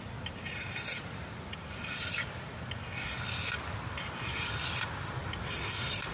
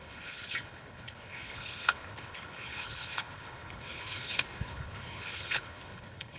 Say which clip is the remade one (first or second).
second